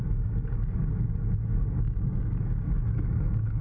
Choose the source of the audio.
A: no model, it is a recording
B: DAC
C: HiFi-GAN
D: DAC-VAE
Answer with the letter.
B